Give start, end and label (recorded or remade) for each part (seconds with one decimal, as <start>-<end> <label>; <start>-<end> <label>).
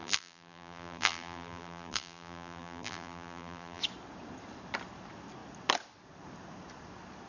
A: 0.0-3.8 remade; 3.8-7.3 recorded